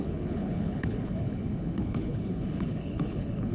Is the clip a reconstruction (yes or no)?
yes